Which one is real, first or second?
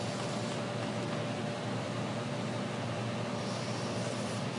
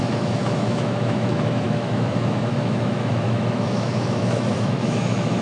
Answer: first